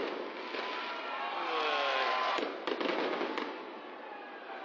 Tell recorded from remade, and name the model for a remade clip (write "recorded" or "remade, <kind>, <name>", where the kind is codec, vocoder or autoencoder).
recorded